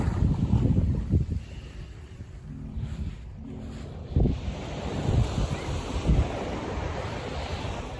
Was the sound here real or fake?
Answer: fake